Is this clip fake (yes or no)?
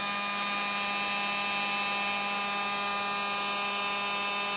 no